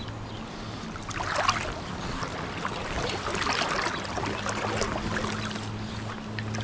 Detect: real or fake real